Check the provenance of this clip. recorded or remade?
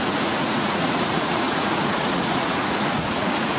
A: remade